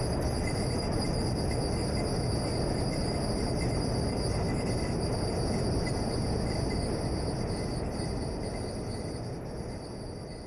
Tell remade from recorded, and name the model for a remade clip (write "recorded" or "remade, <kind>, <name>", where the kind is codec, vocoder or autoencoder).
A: recorded